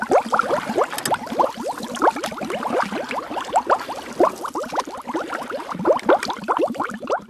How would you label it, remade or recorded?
recorded